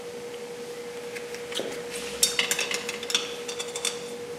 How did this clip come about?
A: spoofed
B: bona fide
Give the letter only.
B